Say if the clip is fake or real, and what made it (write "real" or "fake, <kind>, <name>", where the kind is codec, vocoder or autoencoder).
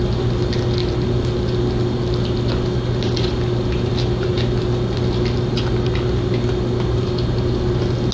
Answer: real